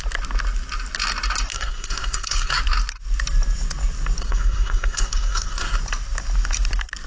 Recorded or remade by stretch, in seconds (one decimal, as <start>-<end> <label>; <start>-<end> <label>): 0.0-1.5 recorded; 1.5-2.6 remade; 2.6-4.2 recorded; 4.2-5.8 remade; 5.8-7.1 recorded